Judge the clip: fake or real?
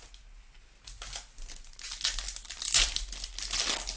real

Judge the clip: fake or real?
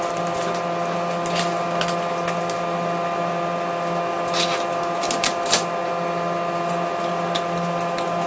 real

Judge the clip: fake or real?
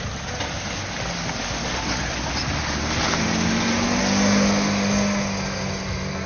real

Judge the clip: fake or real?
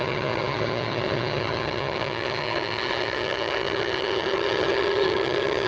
fake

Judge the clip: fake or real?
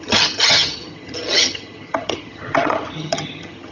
fake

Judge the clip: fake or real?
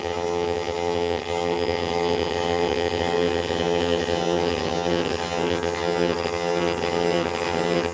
fake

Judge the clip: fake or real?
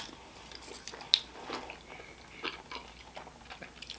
real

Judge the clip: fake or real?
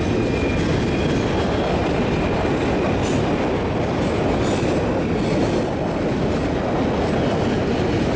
real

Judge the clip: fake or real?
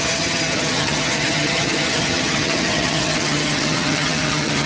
fake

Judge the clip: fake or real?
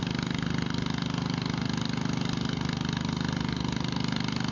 real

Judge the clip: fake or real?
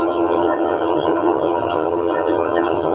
fake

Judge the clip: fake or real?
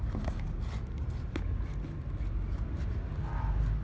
real